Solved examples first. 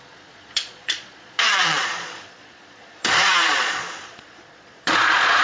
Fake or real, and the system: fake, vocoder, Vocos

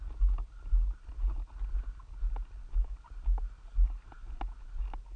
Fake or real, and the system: real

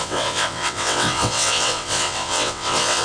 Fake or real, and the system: fake, vocoder, WaveNeXt